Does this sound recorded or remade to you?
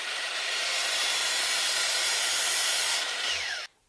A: remade